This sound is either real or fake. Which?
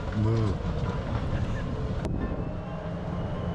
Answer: real